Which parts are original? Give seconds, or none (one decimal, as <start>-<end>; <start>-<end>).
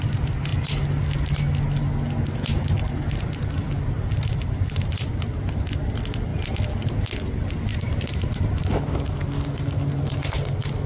0.0-7.7; 9.1-10.9